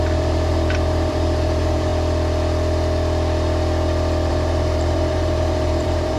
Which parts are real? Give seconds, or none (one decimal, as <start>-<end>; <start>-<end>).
1.9-4.3